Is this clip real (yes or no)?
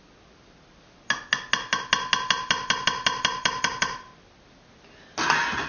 yes